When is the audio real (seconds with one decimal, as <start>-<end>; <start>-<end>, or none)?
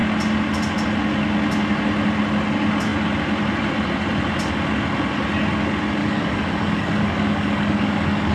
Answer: 0.0-6.0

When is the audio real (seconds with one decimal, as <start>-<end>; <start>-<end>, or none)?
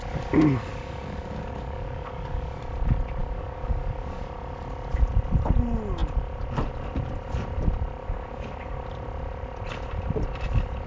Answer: 0.0-0.7; 2.6-3.2; 4.2-8.0; 8.8-10.9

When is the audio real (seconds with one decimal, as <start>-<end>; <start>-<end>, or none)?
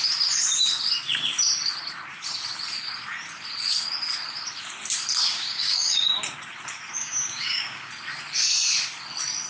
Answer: 0.0-5.3; 6.1-7.0; 7.9-9.5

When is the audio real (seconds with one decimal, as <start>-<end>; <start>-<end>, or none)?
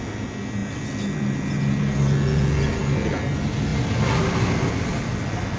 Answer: 0.0-5.6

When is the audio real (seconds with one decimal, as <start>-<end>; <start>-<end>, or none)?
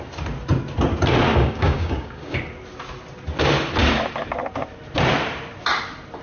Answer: 0.0-1.3; 2.4-6.2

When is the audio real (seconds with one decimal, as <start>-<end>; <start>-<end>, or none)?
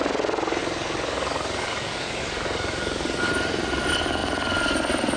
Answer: 0.0-0.6; 3.3-5.2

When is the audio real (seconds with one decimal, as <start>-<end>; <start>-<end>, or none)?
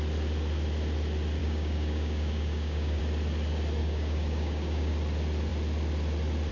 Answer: 0.0-1.4; 3.0-3.8; 4.9-6.5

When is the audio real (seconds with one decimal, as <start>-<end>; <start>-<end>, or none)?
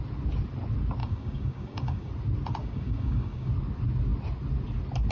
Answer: 0.0-1.0; 2.1-2.6; 3.5-5.1